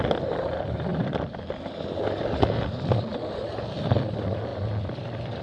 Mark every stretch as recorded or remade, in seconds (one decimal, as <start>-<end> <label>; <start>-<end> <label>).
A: 0.0-0.9 recorded; 0.9-2.6 remade; 2.6-3.1 recorded; 3.1-4.0 remade; 4.0-4.5 recorded; 4.5-5.4 remade